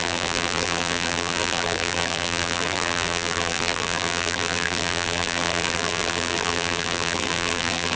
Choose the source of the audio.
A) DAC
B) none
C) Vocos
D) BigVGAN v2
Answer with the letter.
D